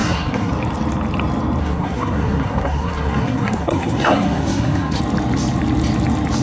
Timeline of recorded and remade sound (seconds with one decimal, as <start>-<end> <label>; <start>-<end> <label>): 0.0-0.5 remade; 0.5-1.6 recorded; 1.6-5.0 remade; 5.0-6.4 recorded